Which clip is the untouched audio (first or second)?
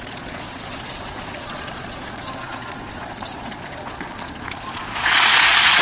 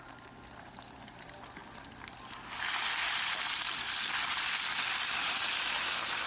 second